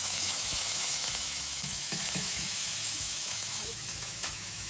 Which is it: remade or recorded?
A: remade